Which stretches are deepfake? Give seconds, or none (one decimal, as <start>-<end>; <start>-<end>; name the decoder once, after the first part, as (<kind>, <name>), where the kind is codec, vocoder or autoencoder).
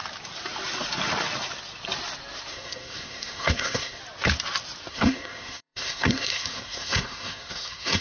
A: 2.5-4.0 (codec, SNAC); 4.9-8.0